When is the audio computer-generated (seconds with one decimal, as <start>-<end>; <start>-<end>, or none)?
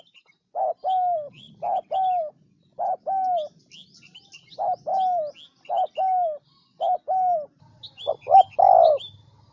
none